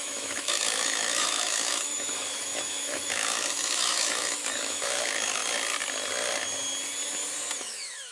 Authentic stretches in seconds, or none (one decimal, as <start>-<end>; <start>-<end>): 5.4-7.6